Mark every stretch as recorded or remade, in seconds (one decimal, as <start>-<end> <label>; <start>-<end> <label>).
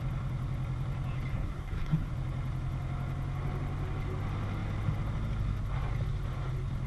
0.0-1.3 recorded; 1.3-2.1 remade; 2.1-6.9 recorded